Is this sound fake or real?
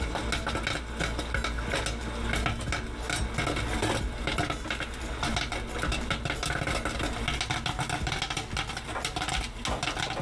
real